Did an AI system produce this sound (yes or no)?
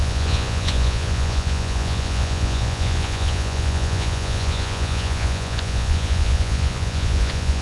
yes